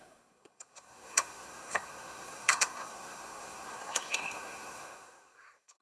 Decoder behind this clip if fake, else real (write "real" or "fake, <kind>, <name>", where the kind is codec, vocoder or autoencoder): fake, codec, SNAC